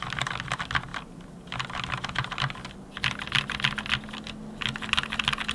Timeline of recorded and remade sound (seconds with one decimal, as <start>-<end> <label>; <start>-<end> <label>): 0.0-5.5 recorded